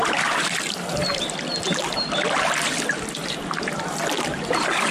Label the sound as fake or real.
real